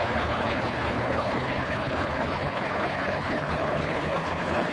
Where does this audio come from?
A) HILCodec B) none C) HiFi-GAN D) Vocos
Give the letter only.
A